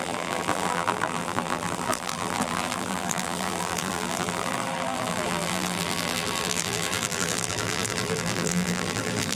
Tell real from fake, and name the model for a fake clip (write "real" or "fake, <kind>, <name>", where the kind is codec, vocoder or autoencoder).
fake, vocoder, BigVGAN v2